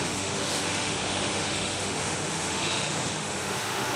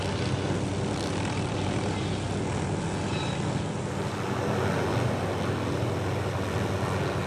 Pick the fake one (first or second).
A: first